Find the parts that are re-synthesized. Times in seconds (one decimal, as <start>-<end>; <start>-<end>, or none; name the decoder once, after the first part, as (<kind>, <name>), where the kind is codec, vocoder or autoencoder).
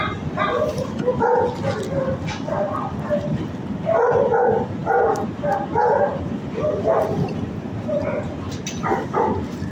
none